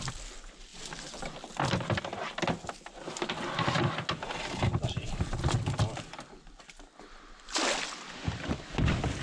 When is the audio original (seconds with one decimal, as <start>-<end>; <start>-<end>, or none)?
0.0-9.2